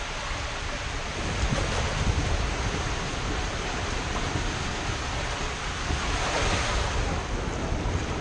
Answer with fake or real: real